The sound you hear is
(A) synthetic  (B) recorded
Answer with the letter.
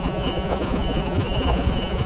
A